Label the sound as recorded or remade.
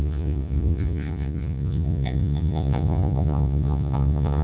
remade